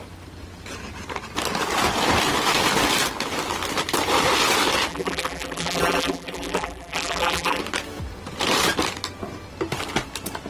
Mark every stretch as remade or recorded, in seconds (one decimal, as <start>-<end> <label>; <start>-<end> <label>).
0.0-4.9 recorded; 4.9-7.6 remade; 7.6-10.5 recorded